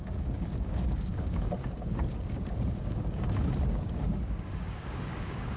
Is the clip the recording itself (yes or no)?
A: no